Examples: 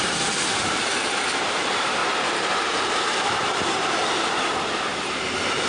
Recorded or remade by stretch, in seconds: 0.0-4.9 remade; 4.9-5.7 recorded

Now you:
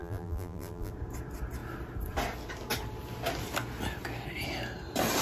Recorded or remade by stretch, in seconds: 0.0-0.9 remade; 0.9-5.2 recorded

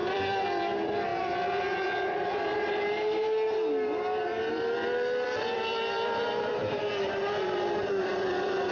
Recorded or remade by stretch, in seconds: 0.0-1.1 remade; 1.1-4.5 recorded; 4.5-8.7 remade

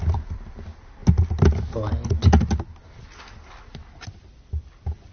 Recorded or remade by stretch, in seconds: 0.0-1.0 remade; 1.0-4.1 recorded; 4.1-5.1 remade